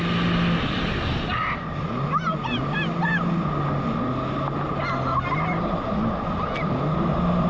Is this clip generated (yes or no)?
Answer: no